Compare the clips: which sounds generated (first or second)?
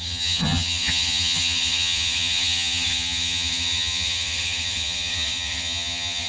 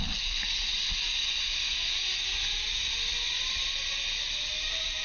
first